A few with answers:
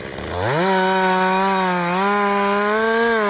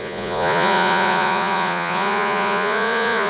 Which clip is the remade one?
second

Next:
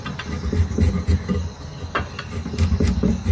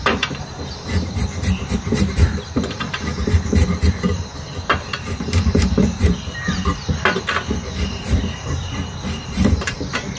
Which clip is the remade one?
second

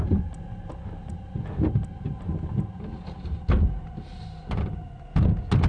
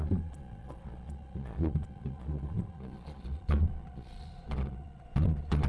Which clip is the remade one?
second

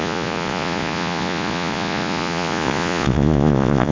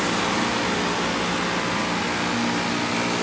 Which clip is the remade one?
first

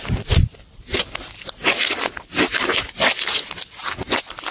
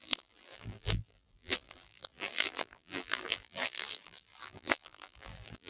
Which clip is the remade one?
second